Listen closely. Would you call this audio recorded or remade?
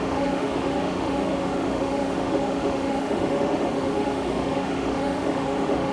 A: remade